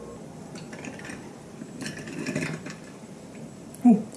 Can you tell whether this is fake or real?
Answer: fake